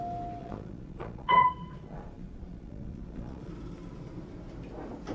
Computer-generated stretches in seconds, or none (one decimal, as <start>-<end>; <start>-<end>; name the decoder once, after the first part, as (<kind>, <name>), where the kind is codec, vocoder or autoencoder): 0.4-3.5 (vocoder, Vocos)